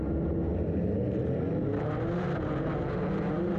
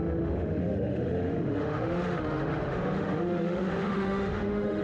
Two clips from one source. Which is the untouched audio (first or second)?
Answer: first